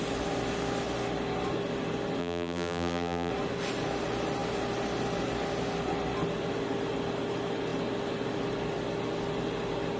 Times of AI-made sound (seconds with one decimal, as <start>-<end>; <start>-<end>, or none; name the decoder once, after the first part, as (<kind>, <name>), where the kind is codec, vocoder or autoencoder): 2.2-3.3 (vocoder, BigVGAN v2)